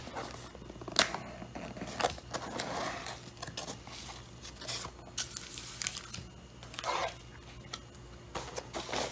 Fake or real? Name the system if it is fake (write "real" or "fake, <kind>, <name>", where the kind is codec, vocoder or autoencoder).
real